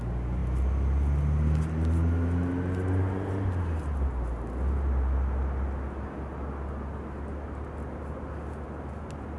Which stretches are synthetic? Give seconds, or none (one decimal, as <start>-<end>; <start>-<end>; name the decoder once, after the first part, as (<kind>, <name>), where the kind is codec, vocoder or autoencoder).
none